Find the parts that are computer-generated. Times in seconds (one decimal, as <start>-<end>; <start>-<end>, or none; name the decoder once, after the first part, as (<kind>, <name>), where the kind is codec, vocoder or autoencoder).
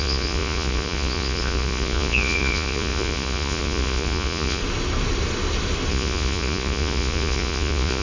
0.0-4.6 (vocoder, Vocos); 5.9-8.0